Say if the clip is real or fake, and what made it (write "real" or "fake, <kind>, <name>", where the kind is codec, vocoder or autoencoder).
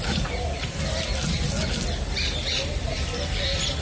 real